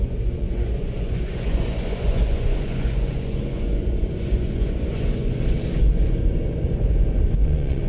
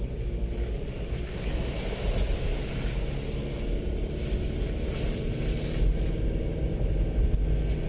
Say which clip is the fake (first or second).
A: first